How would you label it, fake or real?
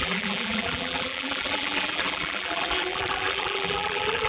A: fake